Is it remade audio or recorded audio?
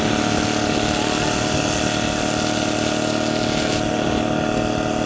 recorded